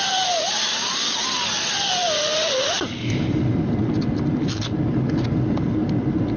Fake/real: real